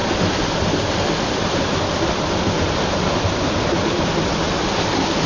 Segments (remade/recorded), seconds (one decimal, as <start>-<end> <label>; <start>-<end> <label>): 0.0-5.3 recorded

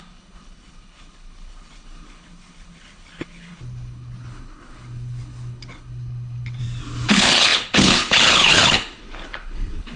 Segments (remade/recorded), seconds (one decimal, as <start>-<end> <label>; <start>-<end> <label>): 0.0-6.6 remade; 6.6-7.1 recorded; 7.1-10.0 remade

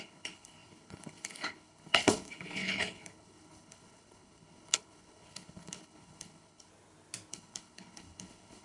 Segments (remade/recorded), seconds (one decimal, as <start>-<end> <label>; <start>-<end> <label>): 0.0-6.7 remade; 6.7-7.3 recorded; 7.3-8.6 remade

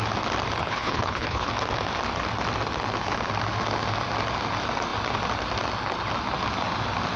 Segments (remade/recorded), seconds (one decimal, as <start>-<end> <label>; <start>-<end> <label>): 0.0-0.6 recorded; 0.6-1.5 remade; 1.5-7.2 recorded

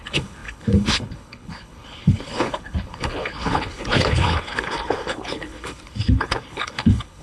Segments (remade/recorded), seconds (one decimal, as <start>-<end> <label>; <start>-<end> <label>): 0.0-7.2 remade

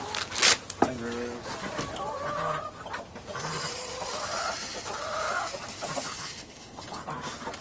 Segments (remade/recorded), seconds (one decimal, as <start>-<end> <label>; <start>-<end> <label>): 0.0-6.1 recorded; 6.1-7.0 remade; 7.0-7.6 recorded